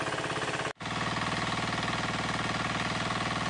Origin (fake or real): real